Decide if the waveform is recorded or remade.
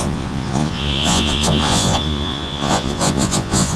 remade